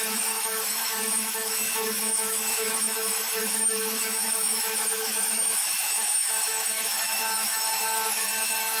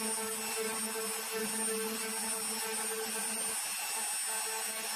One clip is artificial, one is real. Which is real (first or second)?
second